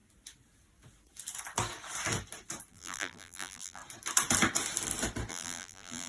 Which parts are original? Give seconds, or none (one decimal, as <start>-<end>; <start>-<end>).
0.0-2.7; 3.8-5.3